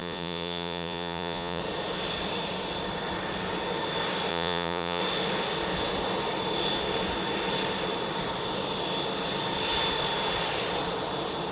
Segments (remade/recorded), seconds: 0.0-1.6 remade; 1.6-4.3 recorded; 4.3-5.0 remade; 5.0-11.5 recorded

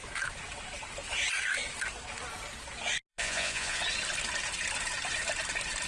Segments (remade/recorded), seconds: 0.0-3.1 recorded; 3.1-3.8 remade; 3.8-5.9 recorded

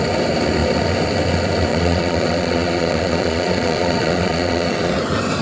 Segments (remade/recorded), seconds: 0.0-1.7 recorded; 1.7-4.9 remade; 4.9-5.4 recorded

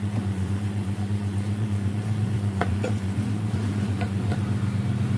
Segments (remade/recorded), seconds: 0.0-4.3 remade; 4.3-5.2 recorded